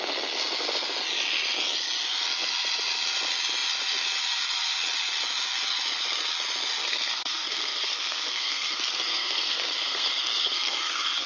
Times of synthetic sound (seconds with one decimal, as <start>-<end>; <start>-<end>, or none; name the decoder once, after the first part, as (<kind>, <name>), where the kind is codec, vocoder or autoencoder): 6.8-11.3 (codec, SNAC)